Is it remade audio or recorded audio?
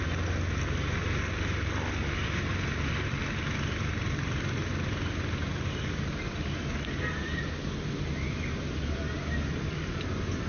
recorded